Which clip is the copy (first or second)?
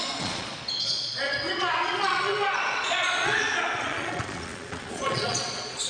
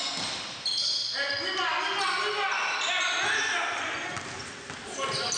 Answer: first